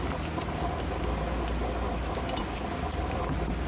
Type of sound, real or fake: real